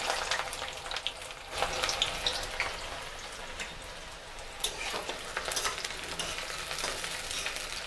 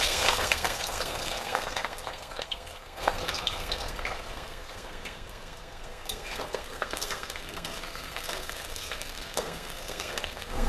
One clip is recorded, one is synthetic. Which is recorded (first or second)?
first